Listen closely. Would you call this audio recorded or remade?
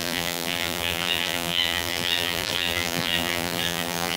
remade